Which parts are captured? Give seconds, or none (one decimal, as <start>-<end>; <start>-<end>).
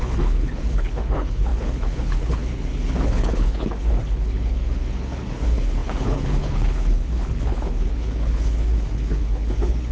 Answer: none